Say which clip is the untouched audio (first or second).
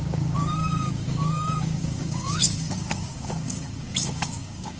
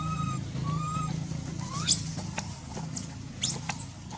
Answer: second